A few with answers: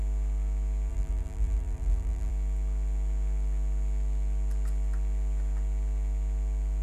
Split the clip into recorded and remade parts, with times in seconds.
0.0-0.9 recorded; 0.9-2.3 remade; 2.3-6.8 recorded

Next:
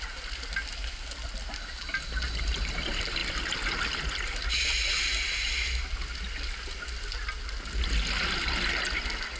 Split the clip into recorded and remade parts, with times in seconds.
0.0-9.4 recorded

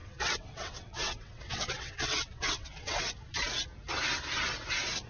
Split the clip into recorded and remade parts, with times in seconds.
0.0-3.1 remade; 3.1-5.1 recorded